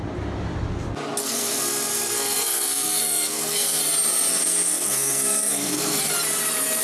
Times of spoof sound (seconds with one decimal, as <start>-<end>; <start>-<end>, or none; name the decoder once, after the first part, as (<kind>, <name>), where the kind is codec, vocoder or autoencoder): 1.2-3.8 (codec, SNAC); 4.3-6.1